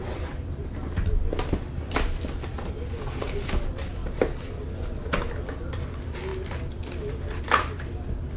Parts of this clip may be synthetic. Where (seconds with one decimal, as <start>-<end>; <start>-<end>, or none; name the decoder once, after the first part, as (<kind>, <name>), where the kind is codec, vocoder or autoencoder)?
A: 4.0-4.6 (vocoder, BigVGAN v2)